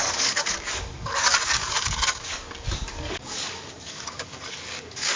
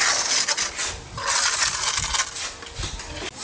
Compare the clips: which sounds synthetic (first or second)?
first